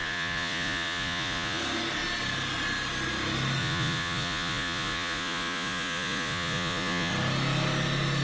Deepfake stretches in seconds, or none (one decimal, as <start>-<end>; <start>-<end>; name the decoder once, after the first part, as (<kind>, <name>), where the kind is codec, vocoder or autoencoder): 0.0-1.6 (vocoder, Vocos); 3.6-7.1